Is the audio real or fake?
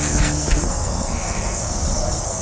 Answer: fake